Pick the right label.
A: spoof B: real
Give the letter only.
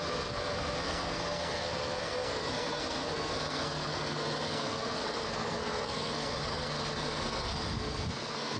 A